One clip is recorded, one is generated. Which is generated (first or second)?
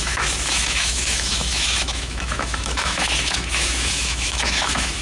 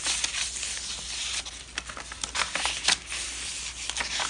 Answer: first